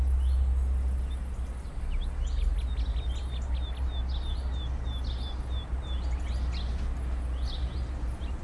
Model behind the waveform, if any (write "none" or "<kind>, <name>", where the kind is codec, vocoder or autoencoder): none